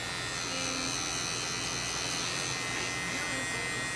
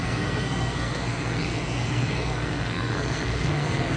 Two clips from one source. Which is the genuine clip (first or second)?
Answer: first